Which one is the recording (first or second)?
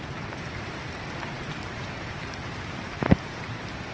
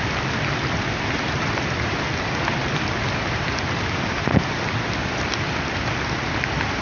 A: second